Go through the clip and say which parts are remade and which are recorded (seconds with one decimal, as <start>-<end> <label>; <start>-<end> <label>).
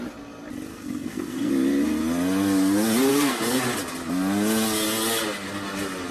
0.0-0.7 recorded; 0.7-1.5 remade; 1.5-3.1 recorded; 3.1-3.6 remade; 3.6-6.1 recorded